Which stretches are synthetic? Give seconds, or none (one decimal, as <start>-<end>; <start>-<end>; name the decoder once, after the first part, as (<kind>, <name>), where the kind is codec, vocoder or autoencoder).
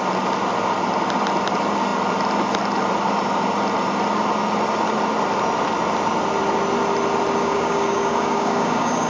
7.4-9.1 (codec, DAC)